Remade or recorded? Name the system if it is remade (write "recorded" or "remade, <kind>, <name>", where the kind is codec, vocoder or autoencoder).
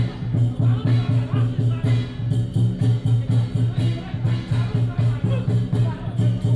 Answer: recorded